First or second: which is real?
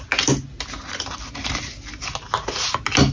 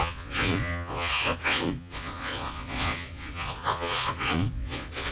first